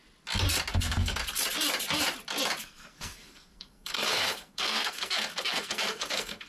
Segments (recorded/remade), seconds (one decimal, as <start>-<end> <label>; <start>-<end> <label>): 0.0-0.7 recorded; 0.7-1.2 remade; 1.2-2.6 recorded; 2.6-6.5 remade